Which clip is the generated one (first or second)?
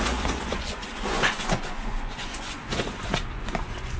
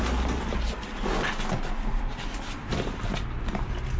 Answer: first